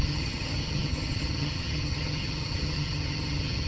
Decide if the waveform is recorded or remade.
remade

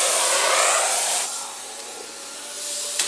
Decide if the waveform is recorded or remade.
recorded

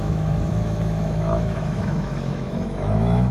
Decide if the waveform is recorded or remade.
remade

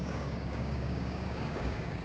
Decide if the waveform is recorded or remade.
remade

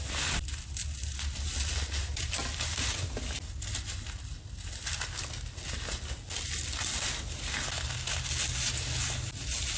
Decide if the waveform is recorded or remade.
recorded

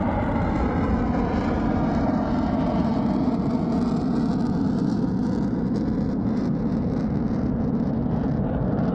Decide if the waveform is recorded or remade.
recorded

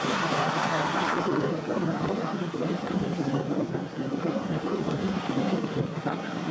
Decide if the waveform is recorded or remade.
remade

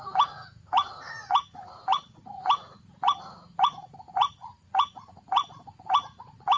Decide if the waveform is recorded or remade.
remade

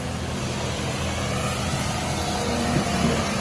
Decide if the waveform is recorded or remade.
recorded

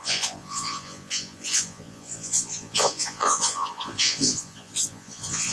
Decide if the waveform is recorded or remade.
remade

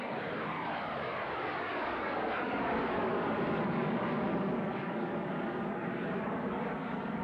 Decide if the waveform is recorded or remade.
remade